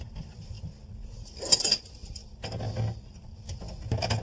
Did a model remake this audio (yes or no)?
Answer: no